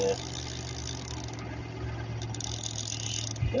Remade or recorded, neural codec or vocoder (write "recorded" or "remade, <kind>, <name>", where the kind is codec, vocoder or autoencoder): recorded